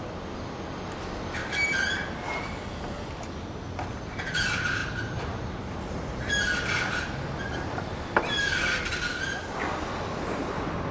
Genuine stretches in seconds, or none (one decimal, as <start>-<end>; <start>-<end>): 0.0-10.9